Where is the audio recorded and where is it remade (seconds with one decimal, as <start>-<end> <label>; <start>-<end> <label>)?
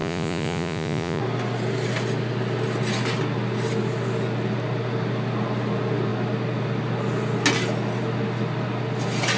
0.0-1.2 remade; 1.2-9.4 recorded